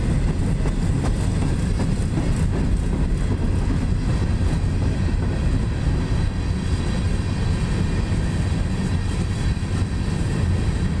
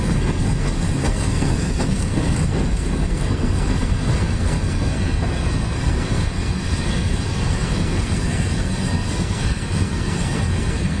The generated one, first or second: second